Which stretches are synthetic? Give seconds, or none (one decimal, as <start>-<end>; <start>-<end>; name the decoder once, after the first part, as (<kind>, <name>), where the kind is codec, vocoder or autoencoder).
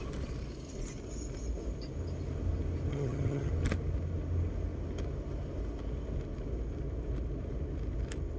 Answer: 2.9-3.5 (vocoder, HiFi-GAN)